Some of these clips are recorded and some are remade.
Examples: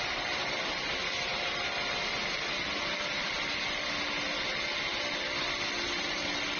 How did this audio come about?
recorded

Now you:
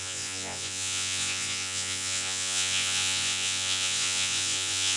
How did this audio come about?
remade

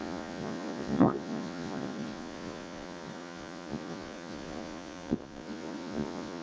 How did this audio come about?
remade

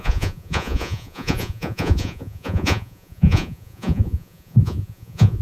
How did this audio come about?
remade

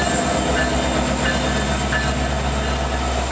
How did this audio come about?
recorded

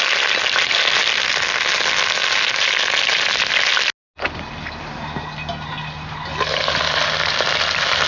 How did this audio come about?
recorded